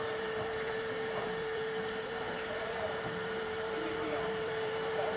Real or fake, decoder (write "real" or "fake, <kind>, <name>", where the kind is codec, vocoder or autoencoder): fake, vocoder, BigVGAN v2